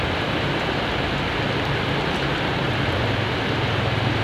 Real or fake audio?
real